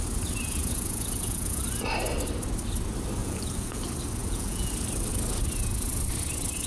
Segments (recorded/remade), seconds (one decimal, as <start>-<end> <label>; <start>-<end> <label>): 0.0-0.6 recorded; 0.6-1.6 remade; 1.6-3.2 recorded; 3.2-3.8 remade; 3.8-4.2 recorded; 4.2-4.7 remade; 4.7-6.7 recorded